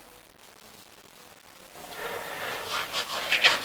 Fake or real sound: real